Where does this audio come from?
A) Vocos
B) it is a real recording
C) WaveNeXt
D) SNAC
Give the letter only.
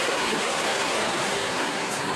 D